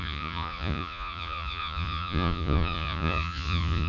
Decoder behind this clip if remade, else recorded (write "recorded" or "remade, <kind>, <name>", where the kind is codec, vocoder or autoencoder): remade, vocoder, Vocos